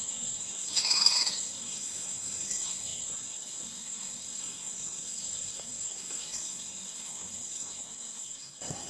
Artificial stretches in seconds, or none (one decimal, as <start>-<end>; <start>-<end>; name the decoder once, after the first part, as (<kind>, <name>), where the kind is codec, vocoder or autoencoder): 0.0-8.9 (codec, SNAC)